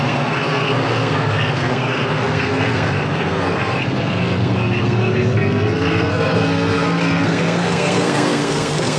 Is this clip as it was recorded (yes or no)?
no